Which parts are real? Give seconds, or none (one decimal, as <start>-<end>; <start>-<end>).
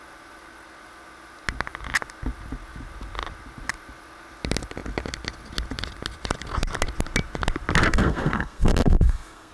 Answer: 0.0-7.8